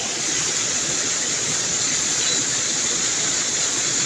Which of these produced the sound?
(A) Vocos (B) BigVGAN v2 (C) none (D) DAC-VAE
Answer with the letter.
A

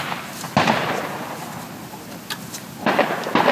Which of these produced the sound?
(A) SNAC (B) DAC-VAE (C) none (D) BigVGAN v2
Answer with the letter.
C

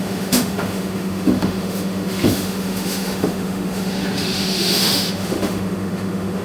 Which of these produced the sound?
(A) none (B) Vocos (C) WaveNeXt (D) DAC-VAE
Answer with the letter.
D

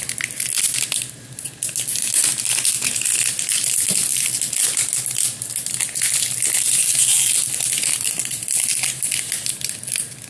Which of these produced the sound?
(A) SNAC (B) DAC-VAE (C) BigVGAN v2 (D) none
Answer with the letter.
D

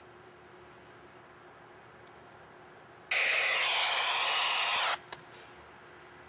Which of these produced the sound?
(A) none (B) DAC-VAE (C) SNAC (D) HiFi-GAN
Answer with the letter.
A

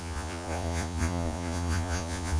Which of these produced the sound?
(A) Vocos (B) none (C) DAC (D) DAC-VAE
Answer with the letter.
A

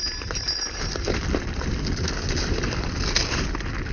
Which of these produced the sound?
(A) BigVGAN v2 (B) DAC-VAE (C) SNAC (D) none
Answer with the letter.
D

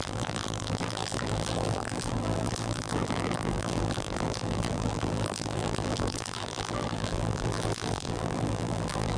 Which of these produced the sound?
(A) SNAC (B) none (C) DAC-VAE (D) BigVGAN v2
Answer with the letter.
D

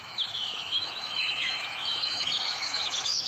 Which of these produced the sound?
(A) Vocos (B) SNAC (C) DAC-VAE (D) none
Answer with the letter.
C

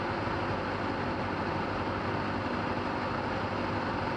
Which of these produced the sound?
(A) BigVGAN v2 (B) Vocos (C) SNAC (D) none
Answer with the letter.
D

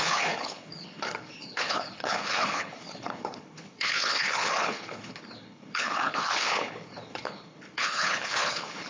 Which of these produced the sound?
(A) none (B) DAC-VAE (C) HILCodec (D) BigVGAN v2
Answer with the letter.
C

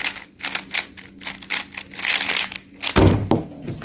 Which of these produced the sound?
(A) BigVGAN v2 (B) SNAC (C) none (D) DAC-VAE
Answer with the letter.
C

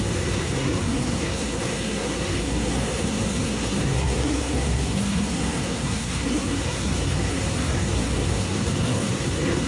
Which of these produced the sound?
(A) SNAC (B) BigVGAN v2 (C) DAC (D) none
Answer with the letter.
A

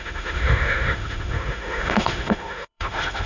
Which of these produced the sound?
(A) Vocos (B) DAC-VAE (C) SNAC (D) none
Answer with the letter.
B